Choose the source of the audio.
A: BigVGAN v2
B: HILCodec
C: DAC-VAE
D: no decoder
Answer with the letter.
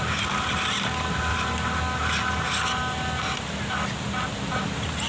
D